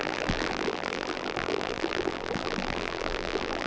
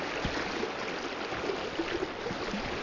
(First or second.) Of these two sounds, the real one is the second